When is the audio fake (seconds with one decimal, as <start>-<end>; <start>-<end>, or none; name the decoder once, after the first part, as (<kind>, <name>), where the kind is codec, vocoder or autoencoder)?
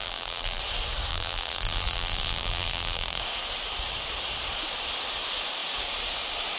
0.0-0.6 (vocoder, BigVGAN v2); 1.1-3.2